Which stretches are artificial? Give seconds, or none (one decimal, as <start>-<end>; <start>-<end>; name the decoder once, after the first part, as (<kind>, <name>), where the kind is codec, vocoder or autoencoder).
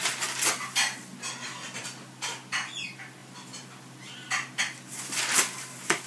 none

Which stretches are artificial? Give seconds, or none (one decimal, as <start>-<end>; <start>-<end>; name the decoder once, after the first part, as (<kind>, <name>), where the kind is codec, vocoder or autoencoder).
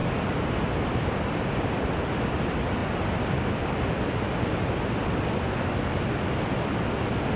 none